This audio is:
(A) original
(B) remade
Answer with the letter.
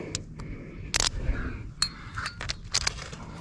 A